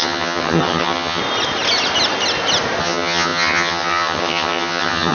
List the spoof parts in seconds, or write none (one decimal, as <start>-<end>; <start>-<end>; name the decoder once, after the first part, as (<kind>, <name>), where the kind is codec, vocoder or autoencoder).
0.0-1.2 (vocoder, HiFi-GAN); 2.8-5.1